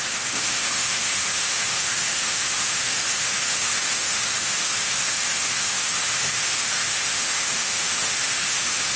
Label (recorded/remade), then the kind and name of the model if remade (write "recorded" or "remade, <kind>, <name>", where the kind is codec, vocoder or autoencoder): remade, autoencoder, DAC-VAE